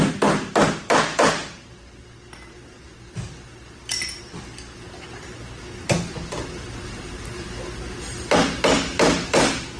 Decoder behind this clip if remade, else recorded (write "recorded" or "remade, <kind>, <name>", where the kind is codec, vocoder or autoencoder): recorded